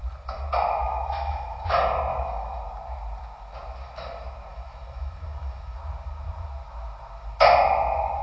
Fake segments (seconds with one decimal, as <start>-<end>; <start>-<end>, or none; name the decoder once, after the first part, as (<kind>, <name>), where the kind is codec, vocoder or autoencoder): 0.8-1.7 (autoencoder, DAC-VAE); 2.1-2.6; 4.5-5.8